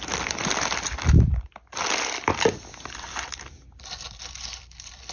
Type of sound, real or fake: fake